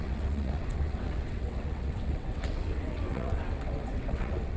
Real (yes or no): no